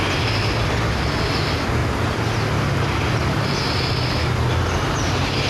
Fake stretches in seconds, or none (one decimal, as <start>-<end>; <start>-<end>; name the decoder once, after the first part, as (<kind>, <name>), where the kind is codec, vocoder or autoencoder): none